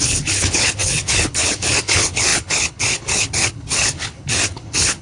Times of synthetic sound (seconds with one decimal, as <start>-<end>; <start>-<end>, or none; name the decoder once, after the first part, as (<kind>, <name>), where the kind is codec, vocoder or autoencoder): 0.0-5.0 (codec, HILCodec)